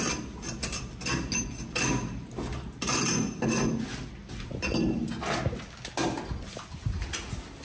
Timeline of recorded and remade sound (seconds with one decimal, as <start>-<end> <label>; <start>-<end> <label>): 0.0-7.6 recorded